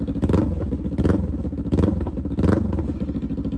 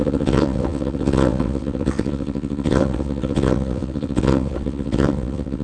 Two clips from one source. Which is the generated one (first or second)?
second